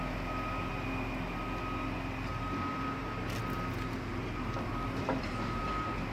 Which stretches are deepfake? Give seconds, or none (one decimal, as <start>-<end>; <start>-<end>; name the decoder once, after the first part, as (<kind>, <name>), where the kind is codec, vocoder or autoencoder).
2.3-3.4 (vocoder, BigVGAN v2); 4.1-5.6

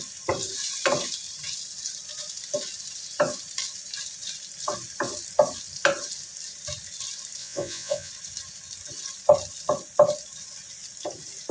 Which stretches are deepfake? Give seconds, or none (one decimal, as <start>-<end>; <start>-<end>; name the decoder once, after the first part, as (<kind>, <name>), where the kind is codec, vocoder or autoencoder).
7.4-8.1 (vocoder, Vocos)